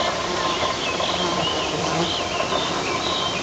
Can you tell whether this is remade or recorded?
recorded